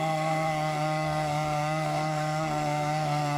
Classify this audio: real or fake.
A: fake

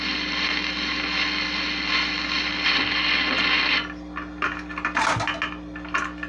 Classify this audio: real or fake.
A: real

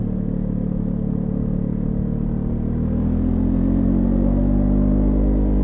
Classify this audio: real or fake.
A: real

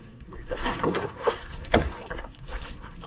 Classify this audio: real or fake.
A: fake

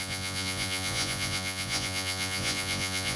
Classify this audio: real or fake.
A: fake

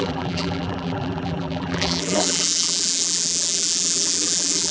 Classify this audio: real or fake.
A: fake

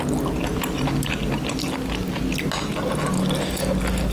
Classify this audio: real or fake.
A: real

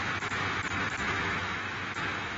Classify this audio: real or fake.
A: fake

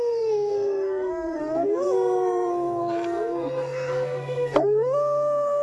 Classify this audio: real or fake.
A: fake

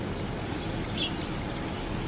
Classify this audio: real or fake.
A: real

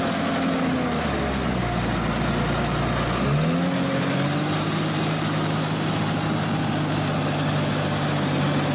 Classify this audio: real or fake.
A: real